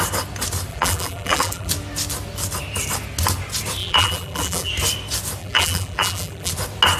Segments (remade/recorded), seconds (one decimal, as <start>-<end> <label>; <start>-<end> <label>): 0.0-0.7 recorded; 0.7-1.7 remade; 1.7-3.8 recorded; 3.8-4.7 remade; 4.7-5.4 recorded; 5.4-6.5 remade; 6.5-7.0 recorded